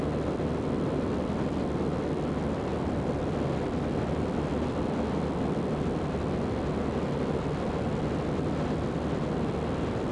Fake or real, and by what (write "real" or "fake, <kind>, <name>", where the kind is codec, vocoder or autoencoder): real